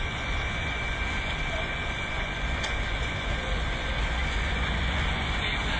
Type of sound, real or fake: fake